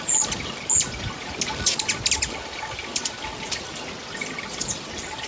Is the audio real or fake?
real